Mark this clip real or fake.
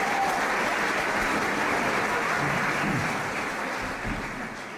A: real